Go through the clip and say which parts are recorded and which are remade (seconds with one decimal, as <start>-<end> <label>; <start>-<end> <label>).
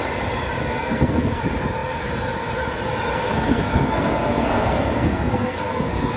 0.0-0.6 recorded; 0.6-1.4 remade; 1.4-3.1 recorded; 3.1-6.2 remade